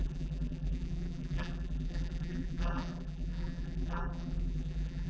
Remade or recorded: remade